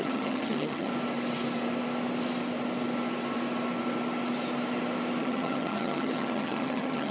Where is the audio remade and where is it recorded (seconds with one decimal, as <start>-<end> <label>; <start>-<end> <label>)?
0.0-0.9 remade; 0.9-5.2 recorded; 5.2-7.1 remade